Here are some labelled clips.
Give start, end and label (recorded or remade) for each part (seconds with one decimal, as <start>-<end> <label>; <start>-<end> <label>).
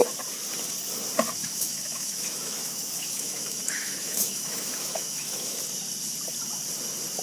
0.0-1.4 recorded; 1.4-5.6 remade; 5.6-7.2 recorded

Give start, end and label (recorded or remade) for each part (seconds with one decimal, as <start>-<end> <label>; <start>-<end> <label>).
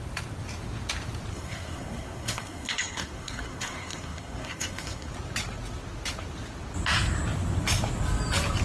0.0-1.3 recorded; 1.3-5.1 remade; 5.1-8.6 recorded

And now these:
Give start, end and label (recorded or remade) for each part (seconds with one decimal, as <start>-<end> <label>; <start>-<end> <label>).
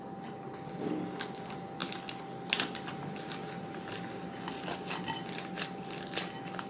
0.0-6.7 recorded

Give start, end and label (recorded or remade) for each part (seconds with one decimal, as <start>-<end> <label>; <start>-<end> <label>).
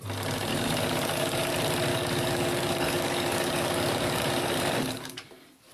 0.0-0.5 recorded; 0.5-1.5 remade; 1.5-1.9 recorded; 1.9-5.3 remade; 5.3-5.7 recorded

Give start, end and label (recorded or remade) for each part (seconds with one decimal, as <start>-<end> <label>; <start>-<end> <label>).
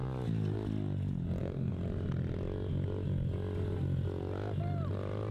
0.0-1.4 recorded; 1.4-1.8 remade; 1.8-5.3 recorded